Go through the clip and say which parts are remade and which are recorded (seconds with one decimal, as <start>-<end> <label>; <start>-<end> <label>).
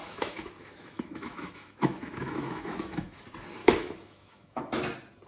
0.0-3.2 remade; 3.2-3.6 recorded; 3.6-4.6 remade; 4.6-5.3 recorded